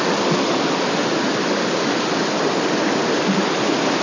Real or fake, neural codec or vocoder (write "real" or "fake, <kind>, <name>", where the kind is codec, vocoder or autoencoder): real